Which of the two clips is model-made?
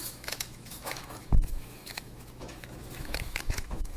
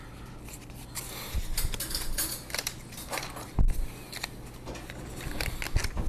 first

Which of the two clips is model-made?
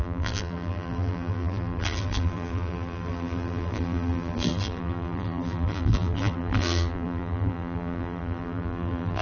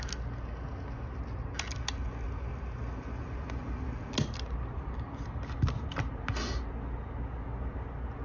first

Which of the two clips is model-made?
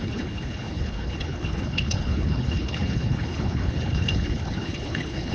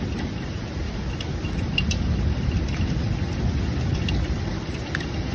first